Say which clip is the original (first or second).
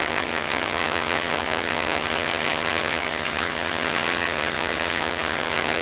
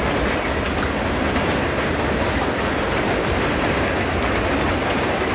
second